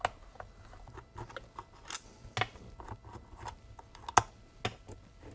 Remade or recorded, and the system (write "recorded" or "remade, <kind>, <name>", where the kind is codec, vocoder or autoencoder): recorded